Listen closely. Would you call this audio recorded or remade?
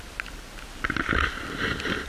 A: recorded